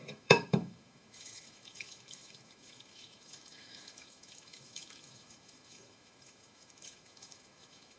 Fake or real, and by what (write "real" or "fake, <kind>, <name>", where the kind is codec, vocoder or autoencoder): fake, autoencoder, DAC-VAE